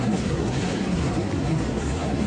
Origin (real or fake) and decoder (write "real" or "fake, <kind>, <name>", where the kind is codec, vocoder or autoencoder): fake, codec, SNAC